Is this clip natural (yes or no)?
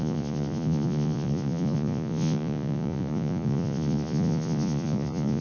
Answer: no